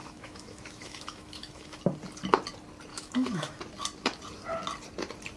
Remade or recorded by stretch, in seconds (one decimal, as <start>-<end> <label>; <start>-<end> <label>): 0.0-1.8 remade; 1.8-2.9 recorded; 2.9-3.6 remade; 3.6-5.4 recorded